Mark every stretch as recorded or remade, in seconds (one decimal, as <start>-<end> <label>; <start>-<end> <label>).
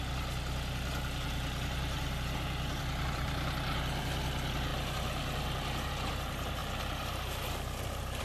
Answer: 0.0-8.2 recorded